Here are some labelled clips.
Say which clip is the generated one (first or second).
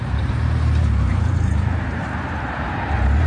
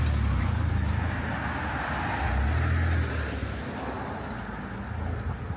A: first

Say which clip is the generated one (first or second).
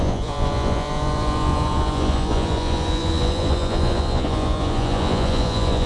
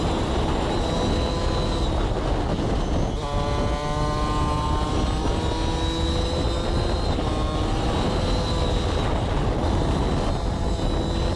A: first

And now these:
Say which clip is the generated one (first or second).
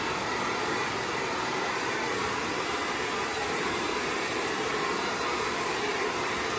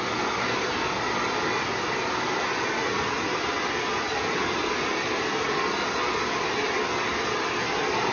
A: first